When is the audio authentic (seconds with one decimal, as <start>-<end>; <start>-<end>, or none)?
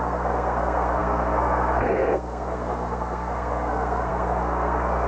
none